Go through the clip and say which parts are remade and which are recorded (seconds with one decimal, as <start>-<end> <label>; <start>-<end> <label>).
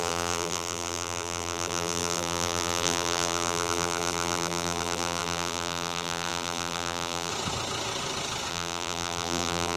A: 0.0-7.3 remade; 7.3-8.5 recorded; 8.5-9.8 remade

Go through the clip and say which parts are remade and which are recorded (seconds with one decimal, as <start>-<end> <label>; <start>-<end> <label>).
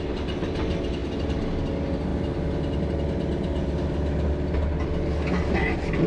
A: 0.0-6.1 recorded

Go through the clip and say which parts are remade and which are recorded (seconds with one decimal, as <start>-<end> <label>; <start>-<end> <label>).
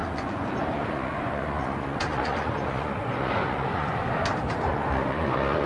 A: 0.0-4.0 remade; 4.0-4.7 recorded; 4.7-5.7 remade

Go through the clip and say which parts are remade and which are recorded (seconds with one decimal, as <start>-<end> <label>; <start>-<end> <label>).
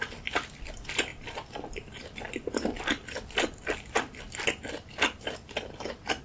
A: 0.0-6.2 recorded